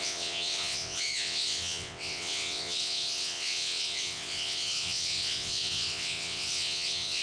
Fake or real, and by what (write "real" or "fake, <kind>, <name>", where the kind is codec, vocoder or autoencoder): fake, vocoder, WaveNeXt